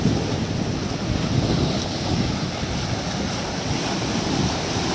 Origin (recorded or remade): recorded